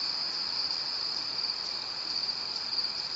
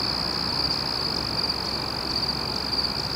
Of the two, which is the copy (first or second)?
first